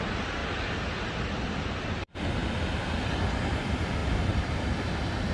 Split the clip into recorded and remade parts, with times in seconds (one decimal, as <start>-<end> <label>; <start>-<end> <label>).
0.0-0.4 remade; 0.4-1.0 recorded; 1.0-2.4 remade; 2.4-3.4 recorded; 3.4-4.0 remade; 4.0-4.8 recorded; 4.8-5.3 remade